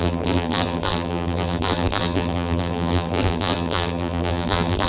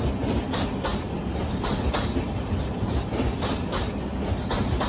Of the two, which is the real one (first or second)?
second